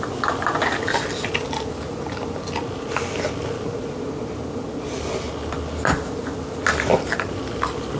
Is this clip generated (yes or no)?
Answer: no